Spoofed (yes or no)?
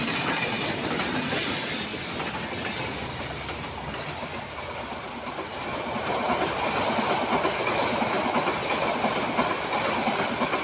no